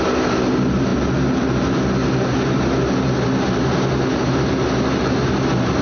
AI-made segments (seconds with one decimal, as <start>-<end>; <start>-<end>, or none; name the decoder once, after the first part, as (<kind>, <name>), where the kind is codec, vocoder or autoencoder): none